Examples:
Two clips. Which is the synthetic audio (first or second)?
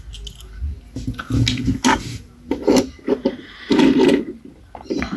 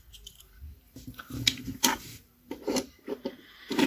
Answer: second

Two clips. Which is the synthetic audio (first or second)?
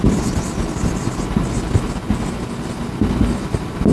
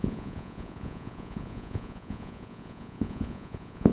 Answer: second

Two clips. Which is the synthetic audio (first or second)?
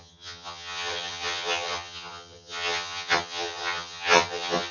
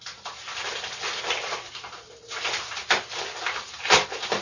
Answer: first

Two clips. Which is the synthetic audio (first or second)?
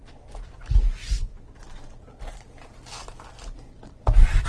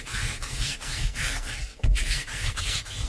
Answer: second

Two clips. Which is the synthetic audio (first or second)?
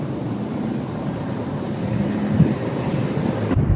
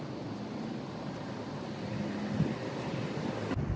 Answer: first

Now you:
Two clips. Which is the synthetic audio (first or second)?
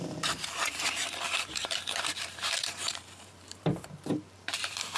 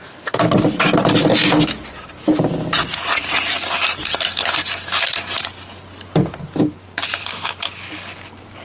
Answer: first